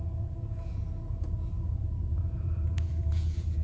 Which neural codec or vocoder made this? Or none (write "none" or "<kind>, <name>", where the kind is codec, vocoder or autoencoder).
vocoder, Vocos